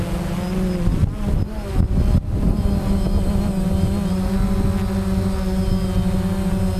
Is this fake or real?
real